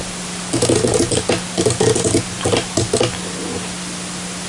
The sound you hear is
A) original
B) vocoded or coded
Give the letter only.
A